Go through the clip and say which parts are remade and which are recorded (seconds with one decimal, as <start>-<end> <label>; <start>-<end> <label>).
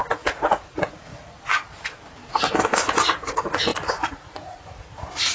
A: 0.0-1.1 remade; 1.1-3.3 recorded; 3.3-5.3 remade